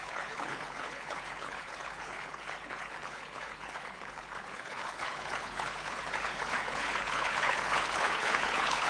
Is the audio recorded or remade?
remade